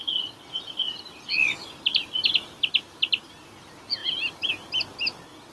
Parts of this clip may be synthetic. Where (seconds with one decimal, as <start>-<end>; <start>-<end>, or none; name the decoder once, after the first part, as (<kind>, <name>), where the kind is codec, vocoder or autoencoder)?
none